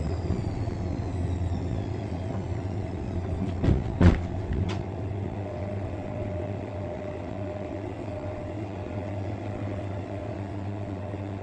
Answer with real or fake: fake